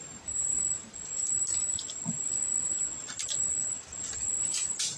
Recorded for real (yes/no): yes